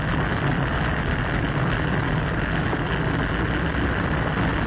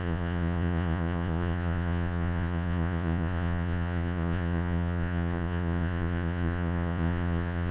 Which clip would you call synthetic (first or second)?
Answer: second